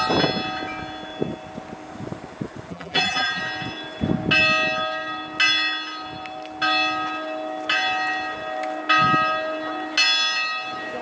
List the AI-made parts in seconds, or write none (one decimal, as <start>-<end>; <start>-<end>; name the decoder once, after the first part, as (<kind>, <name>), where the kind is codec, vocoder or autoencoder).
2.7-3.4 (vocoder, BigVGAN v2)

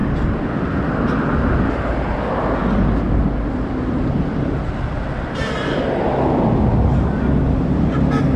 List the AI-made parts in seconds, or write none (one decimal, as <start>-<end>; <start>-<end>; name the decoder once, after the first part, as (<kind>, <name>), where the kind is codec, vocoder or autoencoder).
none